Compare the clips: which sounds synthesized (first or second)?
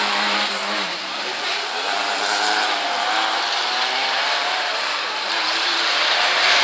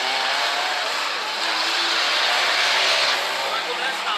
first